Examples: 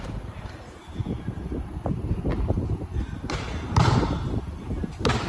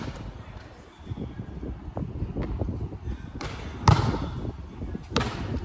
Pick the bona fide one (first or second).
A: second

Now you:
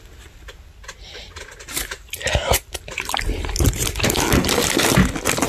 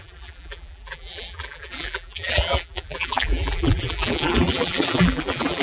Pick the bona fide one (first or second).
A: first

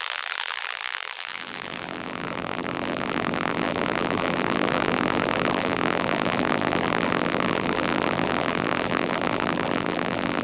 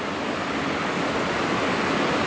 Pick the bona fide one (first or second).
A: second